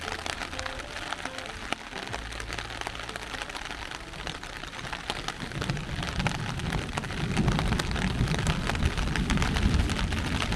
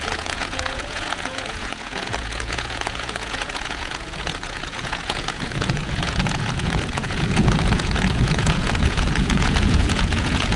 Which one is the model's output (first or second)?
second